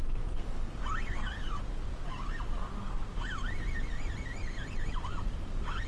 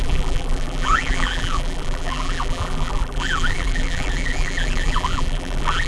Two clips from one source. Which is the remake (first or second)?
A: second